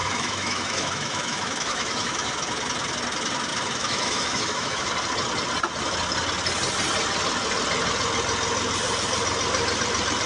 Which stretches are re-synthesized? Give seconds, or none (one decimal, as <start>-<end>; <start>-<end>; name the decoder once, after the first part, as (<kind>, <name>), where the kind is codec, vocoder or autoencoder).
0.0-2.3 (autoencoder, DAC-VAE); 3.5-4.9

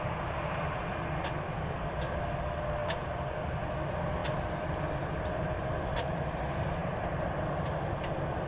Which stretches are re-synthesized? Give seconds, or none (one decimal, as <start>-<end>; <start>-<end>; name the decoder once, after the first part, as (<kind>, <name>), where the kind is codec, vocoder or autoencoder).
2.8-3.3 (vocoder, BigVGAN v2); 4.2-6.0; 6.8-7.8